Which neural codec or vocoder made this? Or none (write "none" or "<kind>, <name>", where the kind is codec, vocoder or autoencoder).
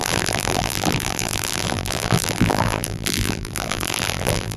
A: vocoder, BigVGAN v2